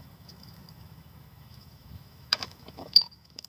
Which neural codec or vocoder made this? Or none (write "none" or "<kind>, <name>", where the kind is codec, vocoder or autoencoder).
autoencoder, DAC-VAE